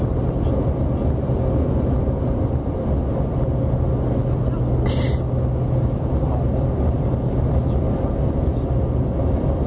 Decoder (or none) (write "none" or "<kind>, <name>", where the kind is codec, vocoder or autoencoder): none